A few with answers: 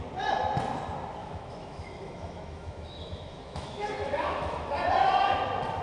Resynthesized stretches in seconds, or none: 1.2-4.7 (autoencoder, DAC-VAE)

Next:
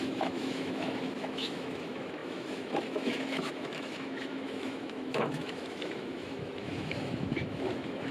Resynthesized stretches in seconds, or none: 0.0-8.1 (autoencoder, DAC-VAE)